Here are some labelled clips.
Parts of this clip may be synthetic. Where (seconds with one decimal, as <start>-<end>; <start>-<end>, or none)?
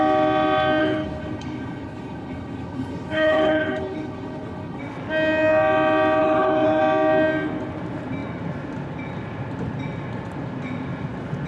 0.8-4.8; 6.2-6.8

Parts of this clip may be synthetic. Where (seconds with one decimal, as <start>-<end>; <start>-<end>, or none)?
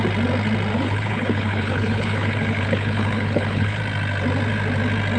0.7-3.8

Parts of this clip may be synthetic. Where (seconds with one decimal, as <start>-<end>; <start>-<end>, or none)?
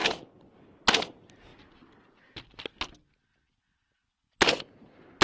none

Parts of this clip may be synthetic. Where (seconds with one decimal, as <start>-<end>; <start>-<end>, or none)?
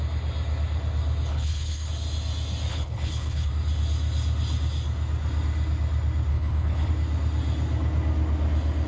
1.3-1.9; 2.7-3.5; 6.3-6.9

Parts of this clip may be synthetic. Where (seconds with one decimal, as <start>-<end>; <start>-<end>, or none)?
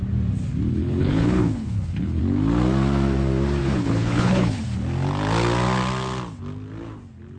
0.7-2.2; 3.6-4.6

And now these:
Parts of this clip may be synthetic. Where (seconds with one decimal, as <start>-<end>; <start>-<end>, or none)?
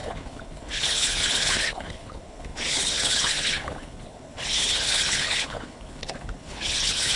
0.0-7.2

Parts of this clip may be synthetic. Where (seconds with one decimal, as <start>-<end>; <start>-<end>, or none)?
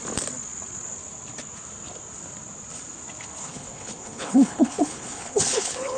3.4-6.0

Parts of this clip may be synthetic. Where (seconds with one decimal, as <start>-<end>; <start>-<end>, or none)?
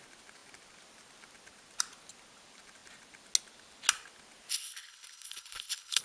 4.5-6.0